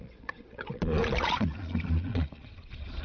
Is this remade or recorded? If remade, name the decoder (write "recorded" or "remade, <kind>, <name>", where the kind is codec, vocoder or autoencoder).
remade, vocoder, Vocos